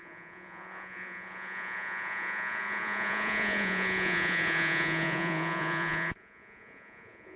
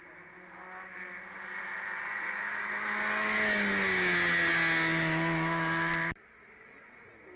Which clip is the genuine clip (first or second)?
second